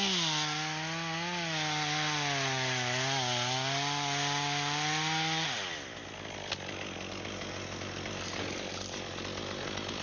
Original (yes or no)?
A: yes